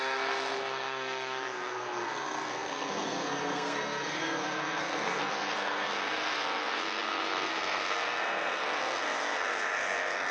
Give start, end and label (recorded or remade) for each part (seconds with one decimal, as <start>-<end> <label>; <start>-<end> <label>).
0.0-10.3 remade